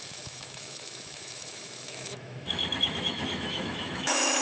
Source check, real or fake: fake